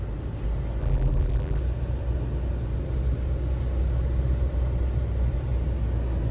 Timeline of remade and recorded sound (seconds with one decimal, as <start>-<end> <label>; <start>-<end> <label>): 0.0-0.8 recorded; 0.8-1.6 remade; 1.6-6.3 recorded